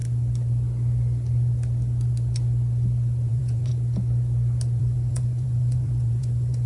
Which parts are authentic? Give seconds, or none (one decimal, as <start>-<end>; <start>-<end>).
0.0-3.3; 3.7-4.8